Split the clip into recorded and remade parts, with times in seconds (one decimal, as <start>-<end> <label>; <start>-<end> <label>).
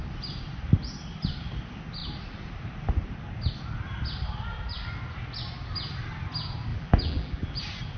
0.0-6.7 recorded; 6.7-7.6 remade; 7.6-8.0 recorded